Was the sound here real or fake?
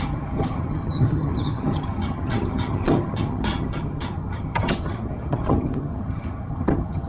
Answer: fake